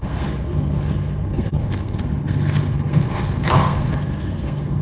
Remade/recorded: remade